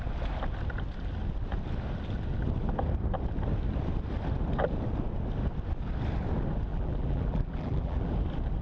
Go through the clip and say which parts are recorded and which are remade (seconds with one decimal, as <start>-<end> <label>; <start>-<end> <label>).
0.0-6.7 recorded; 6.7-8.1 remade; 8.1-8.6 recorded